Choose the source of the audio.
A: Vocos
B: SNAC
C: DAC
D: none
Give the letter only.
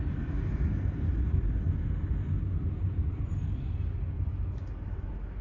D